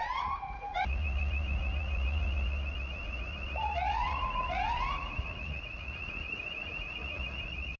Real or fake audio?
fake